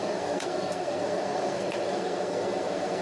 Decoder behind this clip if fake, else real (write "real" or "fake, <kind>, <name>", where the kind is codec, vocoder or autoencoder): fake, codec, SNAC